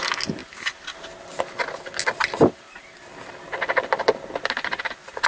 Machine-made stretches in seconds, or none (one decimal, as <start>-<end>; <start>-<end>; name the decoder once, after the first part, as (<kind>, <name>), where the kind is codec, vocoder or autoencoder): none